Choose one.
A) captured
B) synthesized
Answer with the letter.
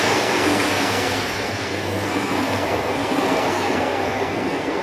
B